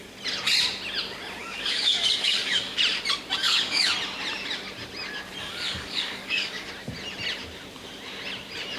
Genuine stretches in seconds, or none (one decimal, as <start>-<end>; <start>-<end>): 0.0-1.4; 2.8-3.4; 3.9-5.4; 6.7-8.8